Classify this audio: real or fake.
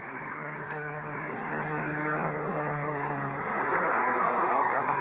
fake